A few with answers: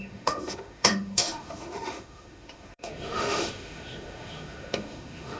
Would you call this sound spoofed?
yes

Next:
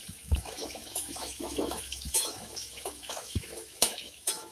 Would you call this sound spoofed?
yes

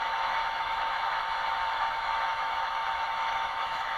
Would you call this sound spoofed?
yes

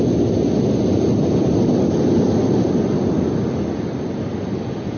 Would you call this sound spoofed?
no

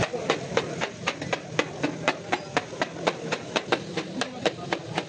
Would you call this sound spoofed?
no